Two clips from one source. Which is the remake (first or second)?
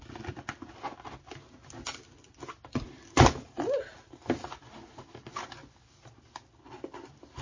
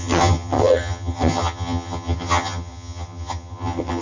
second